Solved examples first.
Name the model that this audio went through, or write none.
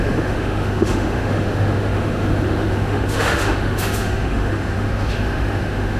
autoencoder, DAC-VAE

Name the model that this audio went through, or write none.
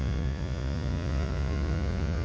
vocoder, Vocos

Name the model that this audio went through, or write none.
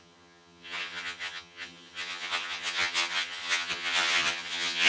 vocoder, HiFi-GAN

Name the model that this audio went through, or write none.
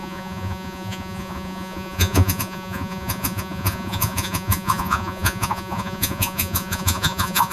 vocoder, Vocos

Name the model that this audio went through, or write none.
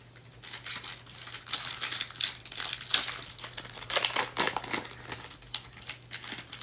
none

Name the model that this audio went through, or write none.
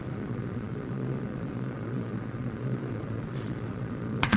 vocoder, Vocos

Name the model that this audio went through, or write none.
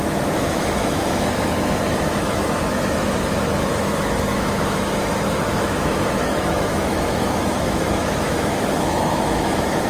autoencoder, DAC-VAE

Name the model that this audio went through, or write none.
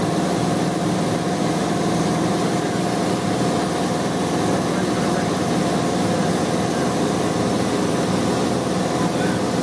none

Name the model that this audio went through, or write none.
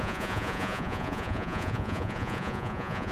vocoder, Vocos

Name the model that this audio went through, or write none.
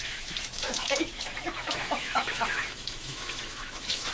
autoencoder, DAC-VAE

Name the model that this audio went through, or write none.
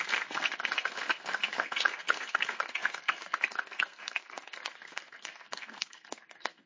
codec, SNAC